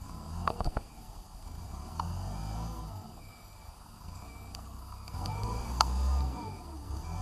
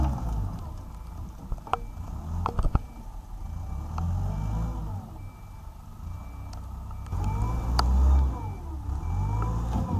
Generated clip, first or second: first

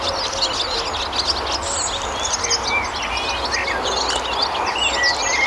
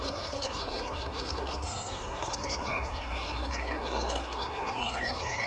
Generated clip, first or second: second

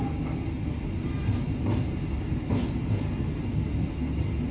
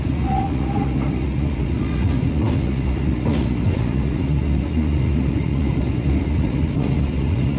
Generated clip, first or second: second